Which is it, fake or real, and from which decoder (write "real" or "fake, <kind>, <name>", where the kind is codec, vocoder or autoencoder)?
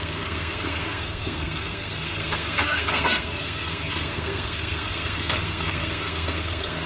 fake, codec, SNAC